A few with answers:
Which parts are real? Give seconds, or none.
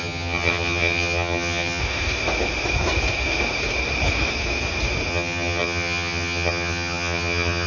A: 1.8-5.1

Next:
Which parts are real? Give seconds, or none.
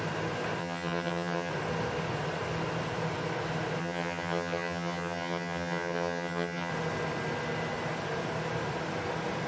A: 0.0-0.6; 1.5-3.8; 6.7-9.5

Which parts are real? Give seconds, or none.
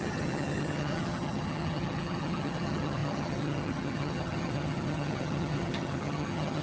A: none